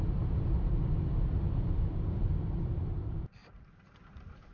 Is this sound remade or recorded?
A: recorded